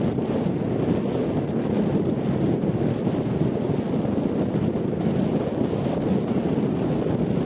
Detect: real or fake real